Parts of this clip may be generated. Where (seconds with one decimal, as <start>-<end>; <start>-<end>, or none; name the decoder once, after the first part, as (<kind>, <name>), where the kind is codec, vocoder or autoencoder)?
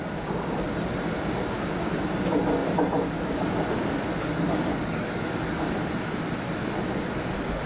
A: 4.1-5.7 (codec, DAC)